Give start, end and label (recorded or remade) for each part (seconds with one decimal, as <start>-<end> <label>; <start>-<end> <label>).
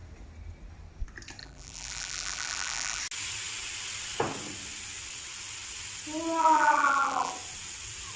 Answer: 0.0-1.4 recorded; 1.4-3.0 remade; 3.0-6.4 recorded; 6.4-7.3 remade; 7.3-8.2 recorded